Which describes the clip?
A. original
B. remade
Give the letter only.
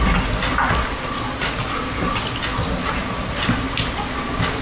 A